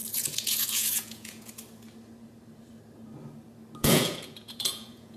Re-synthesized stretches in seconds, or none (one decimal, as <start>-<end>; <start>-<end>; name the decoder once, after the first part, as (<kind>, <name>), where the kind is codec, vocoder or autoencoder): 0.0-1.5 (vocoder, Vocos); 3.8-5.2